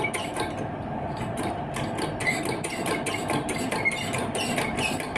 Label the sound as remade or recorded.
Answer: recorded